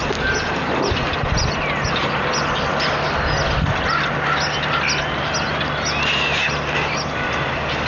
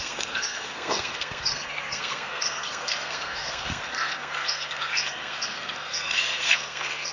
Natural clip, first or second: first